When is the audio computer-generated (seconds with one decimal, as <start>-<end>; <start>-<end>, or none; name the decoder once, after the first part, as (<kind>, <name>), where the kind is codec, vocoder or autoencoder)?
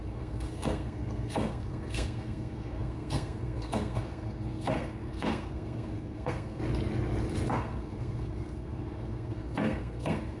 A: 0.0-6.6 (codec, SNAC); 7.5-10.4